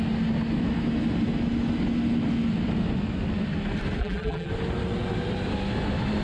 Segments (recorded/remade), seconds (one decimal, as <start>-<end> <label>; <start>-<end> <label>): 0.0-4.0 recorded; 4.0-4.5 remade; 4.5-6.2 recorded